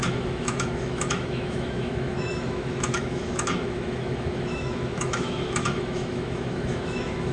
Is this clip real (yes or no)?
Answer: no